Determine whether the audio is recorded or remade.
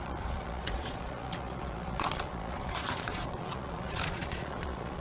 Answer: remade